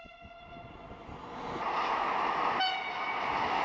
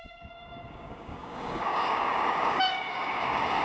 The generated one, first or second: second